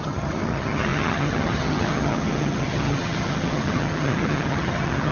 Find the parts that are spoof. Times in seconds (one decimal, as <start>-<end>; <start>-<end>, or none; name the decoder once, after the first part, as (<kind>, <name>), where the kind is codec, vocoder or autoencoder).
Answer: 0.0-5.1 (vocoder, HiFi-GAN)